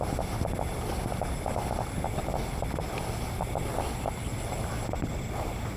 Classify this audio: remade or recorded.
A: recorded